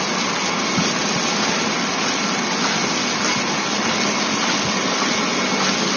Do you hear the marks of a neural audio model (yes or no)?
no